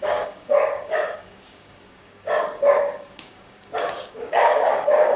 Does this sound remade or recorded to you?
remade